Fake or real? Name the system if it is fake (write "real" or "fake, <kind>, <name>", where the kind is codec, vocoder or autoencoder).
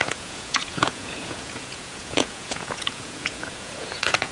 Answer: fake, vocoder, Vocos